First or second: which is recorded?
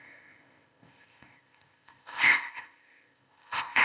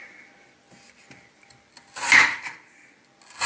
second